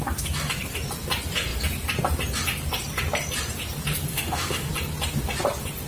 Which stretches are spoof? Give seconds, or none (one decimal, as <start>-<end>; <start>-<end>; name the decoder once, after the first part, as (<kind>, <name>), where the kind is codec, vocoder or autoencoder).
4.1-4.7 (autoencoder, DAC-VAE)